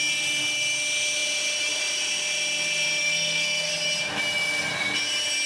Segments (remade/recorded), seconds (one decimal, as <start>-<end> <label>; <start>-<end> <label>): 0.0-3.0 recorded; 3.0-3.7 remade; 3.7-5.5 recorded